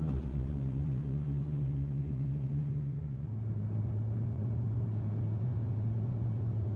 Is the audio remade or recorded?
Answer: remade